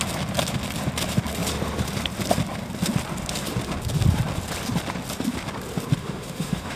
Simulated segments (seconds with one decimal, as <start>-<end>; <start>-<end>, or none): 6.0-6.8